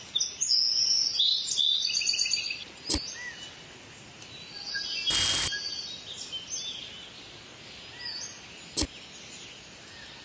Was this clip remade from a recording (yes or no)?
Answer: no